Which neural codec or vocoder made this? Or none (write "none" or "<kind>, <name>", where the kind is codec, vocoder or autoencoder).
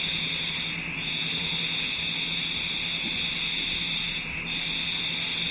none